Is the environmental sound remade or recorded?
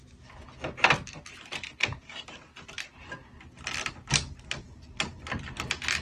recorded